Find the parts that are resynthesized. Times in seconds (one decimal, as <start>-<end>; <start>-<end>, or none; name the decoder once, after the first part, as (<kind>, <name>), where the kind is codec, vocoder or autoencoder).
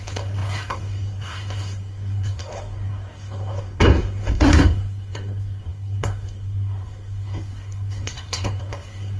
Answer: 0.0-9.2 (codec, SNAC)